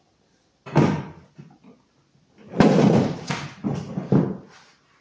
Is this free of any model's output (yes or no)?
yes